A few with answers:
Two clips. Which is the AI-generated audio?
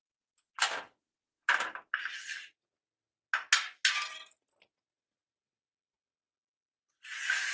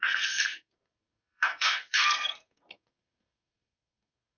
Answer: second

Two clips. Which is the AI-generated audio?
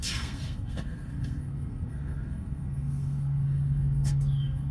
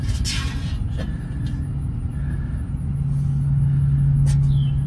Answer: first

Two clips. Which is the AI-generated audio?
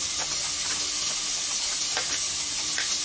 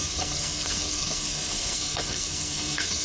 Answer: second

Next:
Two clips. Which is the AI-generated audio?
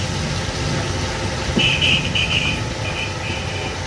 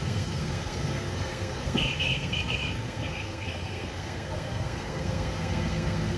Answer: second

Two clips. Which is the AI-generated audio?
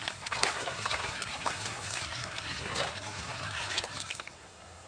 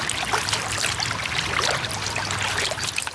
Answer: first